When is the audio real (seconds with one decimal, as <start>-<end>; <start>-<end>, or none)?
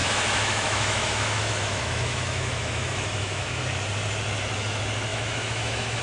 3.6-5.1